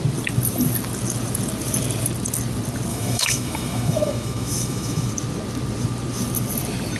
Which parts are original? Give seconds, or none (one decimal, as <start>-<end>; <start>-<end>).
0.0-2.9; 5.1-7.0